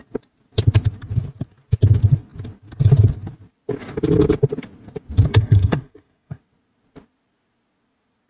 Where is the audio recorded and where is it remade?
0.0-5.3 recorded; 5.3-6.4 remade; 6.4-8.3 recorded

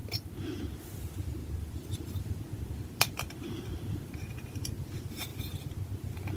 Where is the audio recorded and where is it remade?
0.0-0.6 remade; 0.6-1.4 recorded; 1.4-4.1 remade; 4.1-6.4 recorded

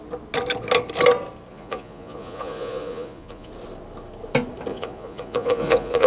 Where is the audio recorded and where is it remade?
0.0-1.5 recorded; 1.5-3.5 remade; 3.5-4.7 recorded; 4.7-6.1 remade